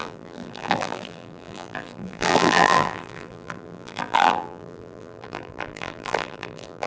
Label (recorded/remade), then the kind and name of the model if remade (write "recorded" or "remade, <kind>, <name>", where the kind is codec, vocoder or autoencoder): remade, vocoder, BigVGAN v2